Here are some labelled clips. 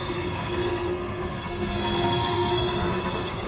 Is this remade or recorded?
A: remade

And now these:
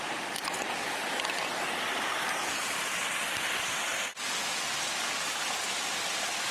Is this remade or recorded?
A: recorded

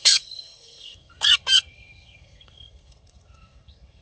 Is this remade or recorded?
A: remade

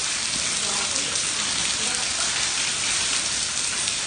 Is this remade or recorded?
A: recorded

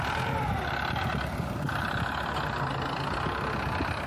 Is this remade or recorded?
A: recorded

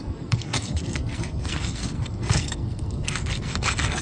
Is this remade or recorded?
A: remade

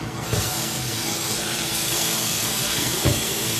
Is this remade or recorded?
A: remade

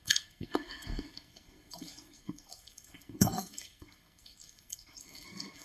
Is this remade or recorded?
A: remade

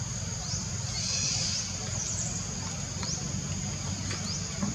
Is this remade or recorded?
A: recorded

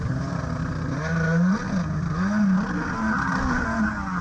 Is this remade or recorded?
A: recorded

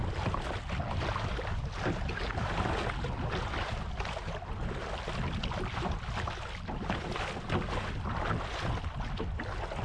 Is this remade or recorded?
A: recorded